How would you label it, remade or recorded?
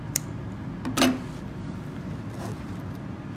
recorded